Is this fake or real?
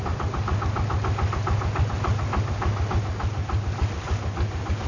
real